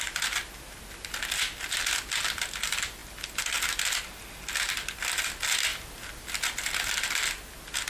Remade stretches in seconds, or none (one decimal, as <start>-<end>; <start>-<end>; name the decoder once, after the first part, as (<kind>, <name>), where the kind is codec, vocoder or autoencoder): none